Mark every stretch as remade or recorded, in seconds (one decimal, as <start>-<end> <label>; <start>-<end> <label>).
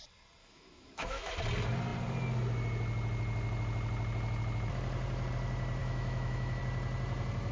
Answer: 0.0-0.4 recorded; 0.4-1.3 remade; 1.3-5.8 recorded; 5.8-6.6 remade; 6.6-7.5 recorded